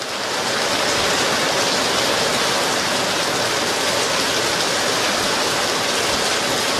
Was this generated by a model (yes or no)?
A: no